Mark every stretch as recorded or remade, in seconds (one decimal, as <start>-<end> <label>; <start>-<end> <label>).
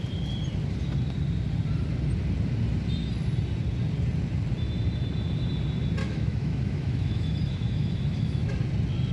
0.0-6.0 recorded; 6.0-8.5 remade; 8.5-9.1 recorded